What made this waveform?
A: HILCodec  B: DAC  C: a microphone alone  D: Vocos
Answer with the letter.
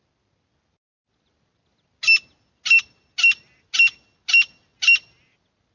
C